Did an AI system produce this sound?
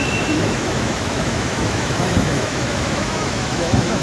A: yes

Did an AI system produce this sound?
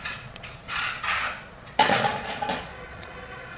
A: yes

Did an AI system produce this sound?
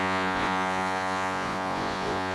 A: yes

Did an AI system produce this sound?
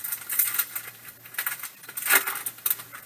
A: no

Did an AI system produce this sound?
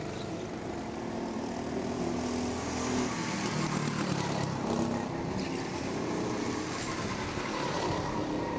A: no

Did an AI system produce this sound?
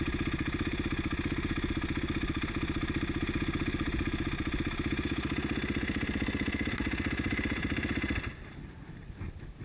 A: no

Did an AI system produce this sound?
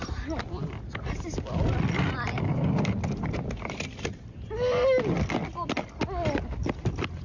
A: no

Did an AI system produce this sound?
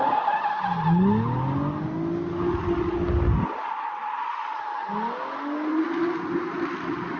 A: no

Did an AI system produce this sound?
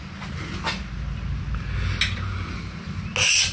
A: no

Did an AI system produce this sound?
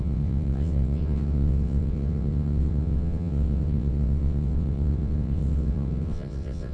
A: yes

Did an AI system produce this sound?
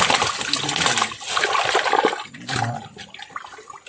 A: no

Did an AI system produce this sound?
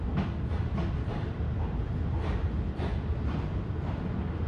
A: no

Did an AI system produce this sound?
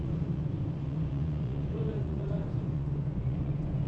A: yes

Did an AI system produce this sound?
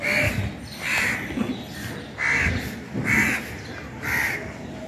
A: no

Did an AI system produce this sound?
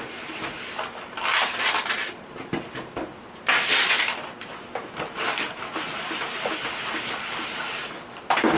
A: no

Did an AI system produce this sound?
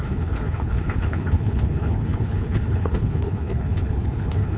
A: yes